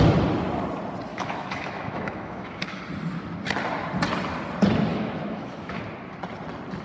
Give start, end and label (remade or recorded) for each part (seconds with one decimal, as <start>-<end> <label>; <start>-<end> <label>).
0.0-1.1 recorded; 1.1-2.8 remade; 2.8-4.9 recorded; 4.9-5.8 remade; 5.8-6.8 recorded